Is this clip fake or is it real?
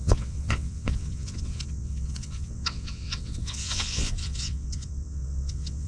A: fake